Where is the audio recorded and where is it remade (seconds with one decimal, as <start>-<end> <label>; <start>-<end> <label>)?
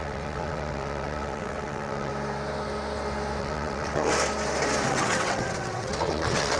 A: 0.0-2.1 remade; 2.1-3.4 recorded; 3.4-4.1 remade; 4.1-4.9 recorded; 4.9-6.6 remade